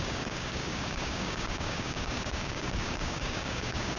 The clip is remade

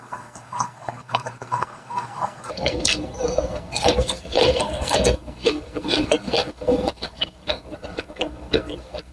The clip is remade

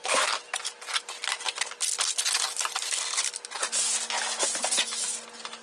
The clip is recorded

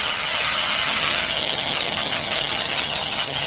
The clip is remade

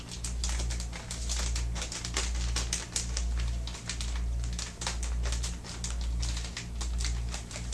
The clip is recorded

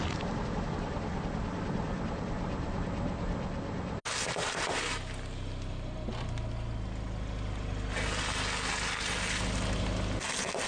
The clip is recorded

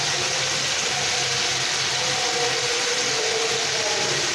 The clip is recorded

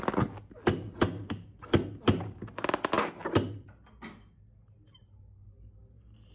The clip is recorded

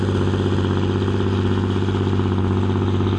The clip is recorded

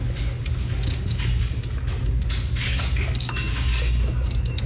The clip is remade